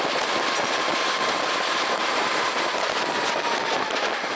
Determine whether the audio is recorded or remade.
remade